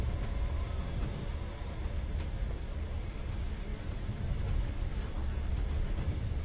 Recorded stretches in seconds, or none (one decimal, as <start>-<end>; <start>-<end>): 0.0-6.4